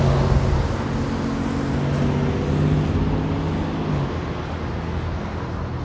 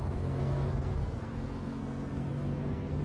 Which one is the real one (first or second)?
first